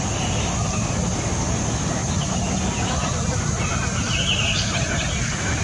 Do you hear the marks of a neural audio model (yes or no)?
no